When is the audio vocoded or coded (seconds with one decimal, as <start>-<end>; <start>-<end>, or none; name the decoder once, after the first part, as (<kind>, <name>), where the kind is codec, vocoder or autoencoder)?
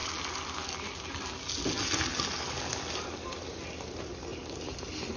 none